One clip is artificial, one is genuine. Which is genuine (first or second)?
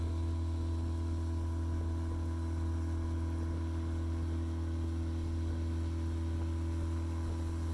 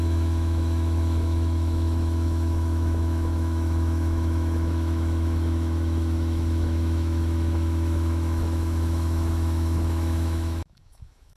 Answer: first